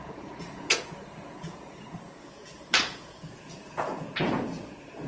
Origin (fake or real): fake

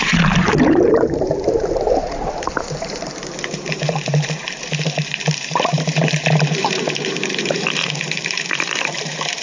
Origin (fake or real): fake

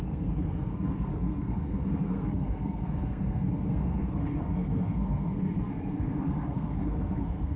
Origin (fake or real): fake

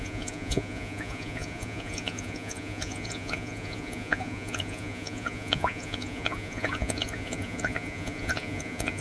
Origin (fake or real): fake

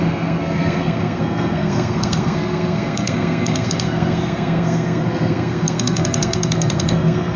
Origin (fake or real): fake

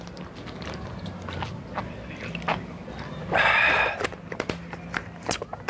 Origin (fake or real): real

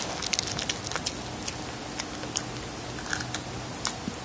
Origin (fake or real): real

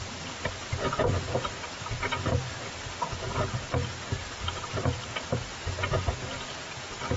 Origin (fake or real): real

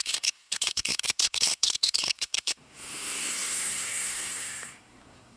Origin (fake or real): fake